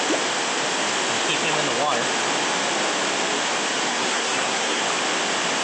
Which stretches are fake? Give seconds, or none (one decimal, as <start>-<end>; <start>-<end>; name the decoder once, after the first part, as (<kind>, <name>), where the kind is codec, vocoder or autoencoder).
3.9-4.8 (codec, SNAC)